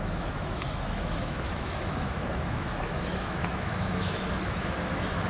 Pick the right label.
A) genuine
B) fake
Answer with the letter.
B